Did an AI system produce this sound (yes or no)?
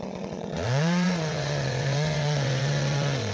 yes